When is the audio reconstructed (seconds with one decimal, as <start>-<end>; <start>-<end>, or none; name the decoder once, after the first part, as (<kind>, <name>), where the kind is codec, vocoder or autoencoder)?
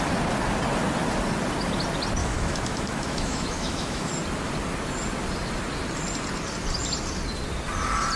2.2-4.1 (autoencoder, DAC-VAE)